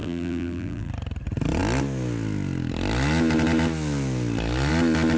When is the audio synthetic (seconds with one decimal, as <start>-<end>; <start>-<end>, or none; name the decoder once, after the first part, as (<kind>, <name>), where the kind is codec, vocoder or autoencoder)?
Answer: 0.0-0.9 (vocoder, BigVGAN v2)